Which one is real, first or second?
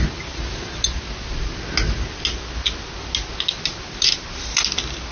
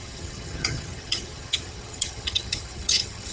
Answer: first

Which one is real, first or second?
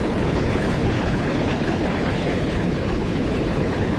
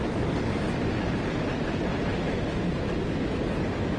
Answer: second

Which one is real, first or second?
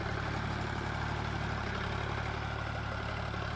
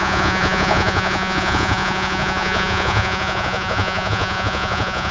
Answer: first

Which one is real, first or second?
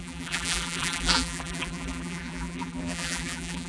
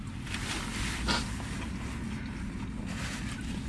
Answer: second